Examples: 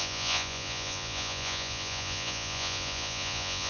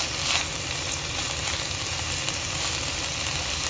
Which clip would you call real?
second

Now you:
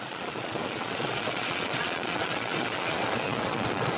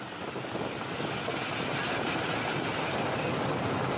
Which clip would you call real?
second